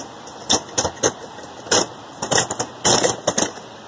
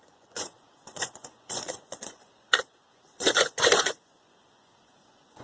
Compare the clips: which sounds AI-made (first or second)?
second